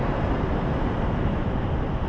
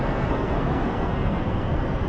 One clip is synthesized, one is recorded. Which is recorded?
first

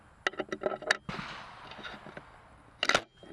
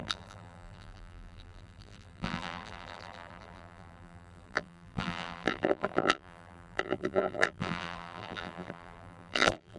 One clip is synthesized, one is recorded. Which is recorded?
first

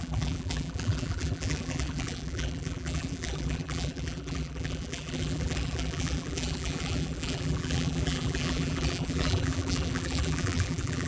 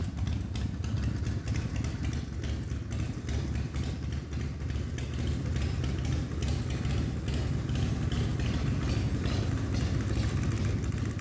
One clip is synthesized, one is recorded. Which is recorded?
second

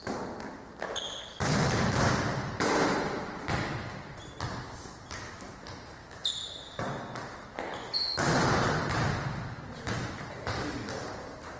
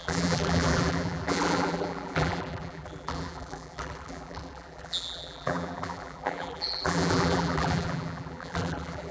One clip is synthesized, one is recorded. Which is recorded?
first